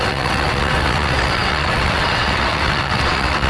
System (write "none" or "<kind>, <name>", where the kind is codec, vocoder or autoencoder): vocoder, WaveNeXt